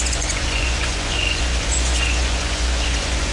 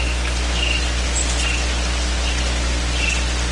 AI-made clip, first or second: first